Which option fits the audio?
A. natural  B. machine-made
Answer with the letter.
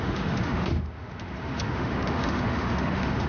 B